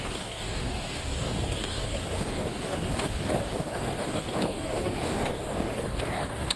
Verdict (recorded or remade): remade